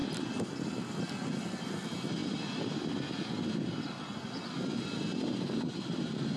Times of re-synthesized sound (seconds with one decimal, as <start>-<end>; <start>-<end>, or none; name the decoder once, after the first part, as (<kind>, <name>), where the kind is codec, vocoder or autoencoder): none

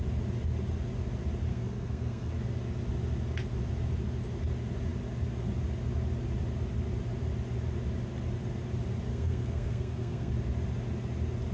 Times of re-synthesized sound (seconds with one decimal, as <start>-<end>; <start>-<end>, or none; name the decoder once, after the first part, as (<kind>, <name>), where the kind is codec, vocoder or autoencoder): 1.5-2.3 (codec, SNAC); 9.1-10.3

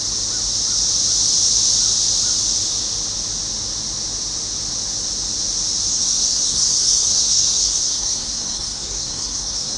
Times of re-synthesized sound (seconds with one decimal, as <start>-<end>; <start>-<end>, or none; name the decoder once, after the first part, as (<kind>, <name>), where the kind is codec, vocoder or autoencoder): 5.9-9.8 (codec, SNAC)

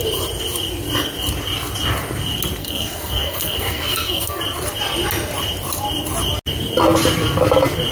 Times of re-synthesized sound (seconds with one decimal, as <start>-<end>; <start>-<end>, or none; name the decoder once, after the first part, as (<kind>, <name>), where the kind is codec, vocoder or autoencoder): 2.6-4.4 (codec, SNAC)

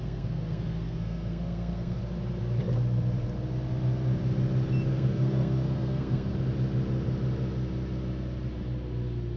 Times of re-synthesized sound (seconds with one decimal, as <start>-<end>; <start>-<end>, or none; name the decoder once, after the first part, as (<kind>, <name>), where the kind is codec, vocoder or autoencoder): 0.0-2.0 (codec, SNAC); 4.9-6.3

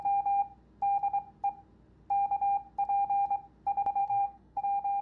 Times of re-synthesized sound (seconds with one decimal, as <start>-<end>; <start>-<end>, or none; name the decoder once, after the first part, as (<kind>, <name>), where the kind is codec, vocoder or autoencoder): 4.0-4.6 (codec, SNAC)

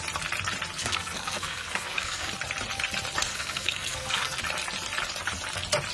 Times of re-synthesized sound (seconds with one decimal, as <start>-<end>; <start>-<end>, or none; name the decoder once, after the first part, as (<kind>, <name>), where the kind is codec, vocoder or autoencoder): 0.8-2.3 (codec, SNAC); 3.3-4.4